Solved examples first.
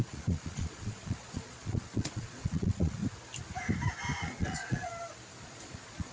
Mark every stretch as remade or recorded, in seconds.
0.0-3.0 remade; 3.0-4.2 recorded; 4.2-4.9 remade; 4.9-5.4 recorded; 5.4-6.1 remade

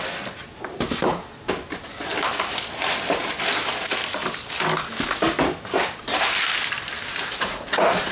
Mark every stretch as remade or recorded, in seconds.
0.0-8.1 recorded

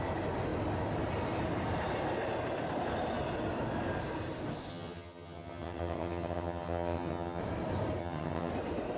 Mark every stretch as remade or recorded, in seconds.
0.0-4.7 recorded; 4.7-7.4 remade; 7.4-8.0 recorded; 8.0-8.5 remade; 8.5-9.0 recorded